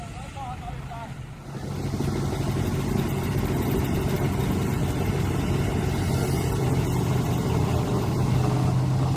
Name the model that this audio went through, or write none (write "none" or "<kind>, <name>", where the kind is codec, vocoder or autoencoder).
none